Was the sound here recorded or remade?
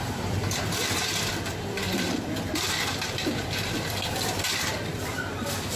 remade